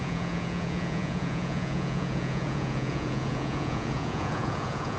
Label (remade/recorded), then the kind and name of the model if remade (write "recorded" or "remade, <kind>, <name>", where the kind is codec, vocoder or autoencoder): remade, vocoder, Vocos